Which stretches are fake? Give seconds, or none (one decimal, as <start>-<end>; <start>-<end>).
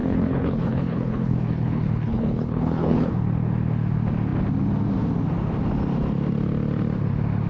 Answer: 0.0-3.1